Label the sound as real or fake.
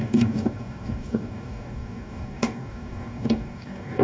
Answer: fake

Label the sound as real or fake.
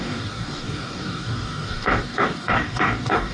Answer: fake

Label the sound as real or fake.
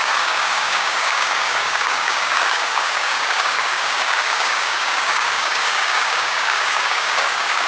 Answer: fake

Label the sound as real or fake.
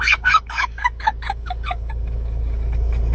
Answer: fake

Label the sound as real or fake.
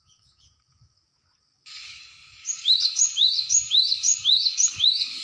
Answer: fake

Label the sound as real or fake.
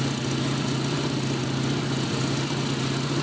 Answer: real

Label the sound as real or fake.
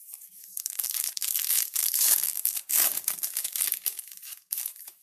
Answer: fake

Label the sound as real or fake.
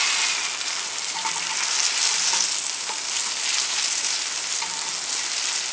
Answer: real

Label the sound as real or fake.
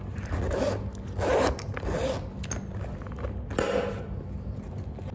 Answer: real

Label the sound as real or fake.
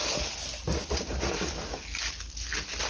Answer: real